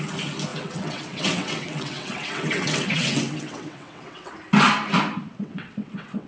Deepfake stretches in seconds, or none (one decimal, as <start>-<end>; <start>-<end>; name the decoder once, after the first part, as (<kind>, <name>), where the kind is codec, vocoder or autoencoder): 0.5-4.3 (vocoder, WaveNeXt); 5.3-6.3